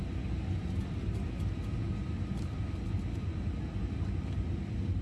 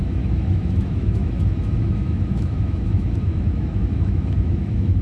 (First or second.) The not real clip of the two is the second